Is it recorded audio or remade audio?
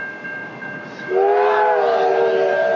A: recorded